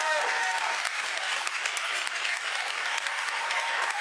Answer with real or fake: fake